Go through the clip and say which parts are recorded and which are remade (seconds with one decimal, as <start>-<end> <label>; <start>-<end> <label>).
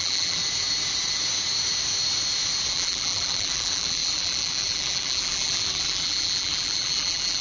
0.0-0.4 remade; 0.4-2.7 recorded; 2.7-7.4 remade